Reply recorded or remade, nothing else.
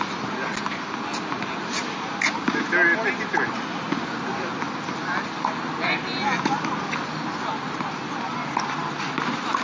recorded